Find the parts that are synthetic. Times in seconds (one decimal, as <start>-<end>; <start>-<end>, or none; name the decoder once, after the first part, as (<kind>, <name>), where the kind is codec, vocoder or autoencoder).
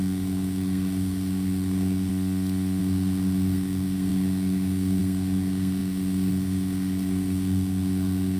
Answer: 0.0-2.1 (codec, SNAC); 2.8-8.4